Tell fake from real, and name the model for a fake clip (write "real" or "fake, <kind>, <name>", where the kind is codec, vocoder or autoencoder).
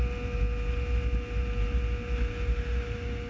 real